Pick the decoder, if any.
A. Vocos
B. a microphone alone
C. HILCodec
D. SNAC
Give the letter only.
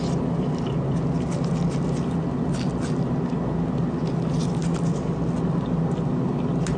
B